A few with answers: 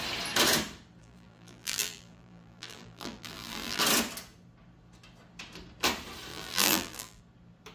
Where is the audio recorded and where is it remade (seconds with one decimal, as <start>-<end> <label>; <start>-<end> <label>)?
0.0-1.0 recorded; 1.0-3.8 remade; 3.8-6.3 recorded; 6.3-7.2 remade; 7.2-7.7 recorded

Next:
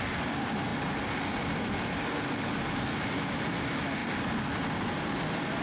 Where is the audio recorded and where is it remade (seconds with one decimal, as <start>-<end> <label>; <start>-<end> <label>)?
0.0-5.6 recorded

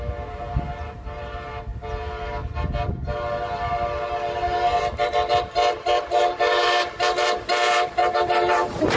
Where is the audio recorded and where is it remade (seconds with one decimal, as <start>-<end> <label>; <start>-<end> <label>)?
0.0-1.7 remade; 1.7-6.0 recorded; 6.0-9.0 remade